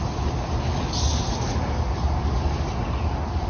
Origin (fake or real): real